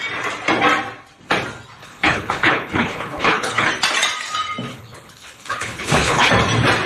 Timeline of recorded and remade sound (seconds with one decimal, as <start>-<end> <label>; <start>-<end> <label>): 0.0-1.8 recorded; 1.8-3.7 remade; 3.7-4.7 recorded; 4.7-6.3 remade; 6.3-6.9 recorded

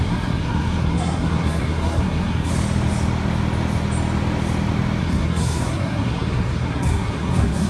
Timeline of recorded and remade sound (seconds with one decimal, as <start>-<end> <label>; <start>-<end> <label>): 0.0-2.5 remade; 2.5-5.0 recorded; 5.0-7.7 remade

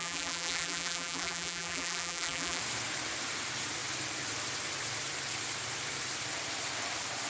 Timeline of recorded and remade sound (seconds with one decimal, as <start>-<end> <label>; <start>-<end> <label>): 0.0-2.6 remade; 2.6-7.3 recorded

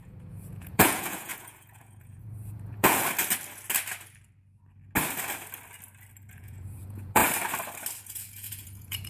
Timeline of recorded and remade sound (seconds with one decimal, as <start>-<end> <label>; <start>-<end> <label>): 0.0-3.0 remade; 3.0-6.3 recorded; 6.3-7.2 remade; 7.2-8.0 recorded; 8.0-9.1 remade

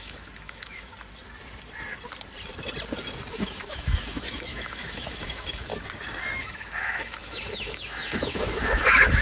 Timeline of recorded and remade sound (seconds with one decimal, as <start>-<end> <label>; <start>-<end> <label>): 0.0-0.9 remade; 0.9-3.3 recorded; 3.3-5.7 remade; 5.7-6.4 recorded; 6.4-9.2 remade

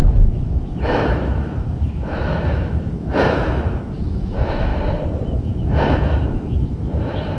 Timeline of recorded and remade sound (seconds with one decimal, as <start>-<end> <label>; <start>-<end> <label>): 0.0-4.7 remade; 4.7-5.4 recorded; 5.4-7.4 remade